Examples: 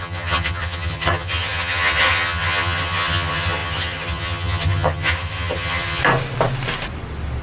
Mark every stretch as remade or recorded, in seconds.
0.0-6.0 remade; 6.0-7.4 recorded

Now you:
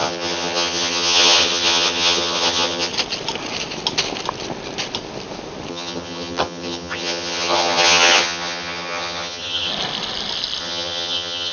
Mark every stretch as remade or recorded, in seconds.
0.0-2.9 remade; 2.9-5.7 recorded; 5.7-9.7 remade; 9.7-10.6 recorded; 10.6-11.5 remade

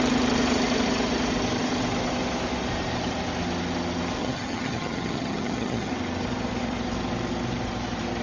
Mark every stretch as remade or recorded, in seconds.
0.0-4.2 recorded; 4.2-5.9 remade; 5.9-8.2 recorded